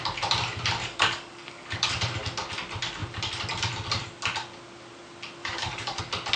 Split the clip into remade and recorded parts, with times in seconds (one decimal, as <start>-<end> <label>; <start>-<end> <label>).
0.0-0.8 recorded; 0.8-1.9 remade; 1.9-5.4 recorded; 5.4-6.0 remade; 6.0-6.4 recorded

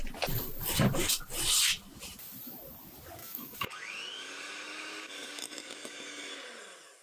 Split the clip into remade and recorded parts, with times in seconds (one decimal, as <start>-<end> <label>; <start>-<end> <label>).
0.0-3.2 recorded; 3.2-6.3 remade; 6.3-7.0 recorded

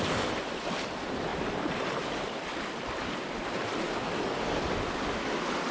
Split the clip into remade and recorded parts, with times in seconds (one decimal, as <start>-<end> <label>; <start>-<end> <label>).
0.0-5.7 recorded

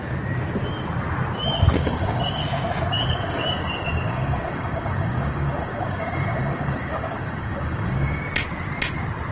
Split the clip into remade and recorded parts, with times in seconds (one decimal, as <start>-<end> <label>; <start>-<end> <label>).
0.0-1.8 recorded; 1.8-2.4 remade; 2.4-2.9 recorded; 2.9-8.2 remade; 8.2-9.3 recorded

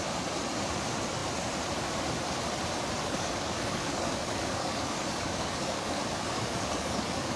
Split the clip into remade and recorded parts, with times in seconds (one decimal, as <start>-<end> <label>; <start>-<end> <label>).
0.0-3.0 recorded; 3.0-7.4 remade